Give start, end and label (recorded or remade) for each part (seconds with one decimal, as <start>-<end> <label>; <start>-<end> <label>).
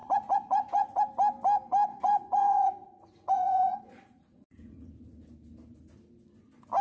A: 0.0-1.0 remade; 1.0-1.9 recorded; 1.9-4.9 remade; 4.9-6.8 recorded